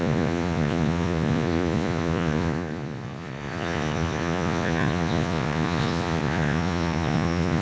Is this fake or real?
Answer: fake